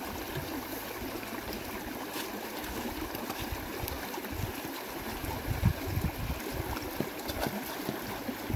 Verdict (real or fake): real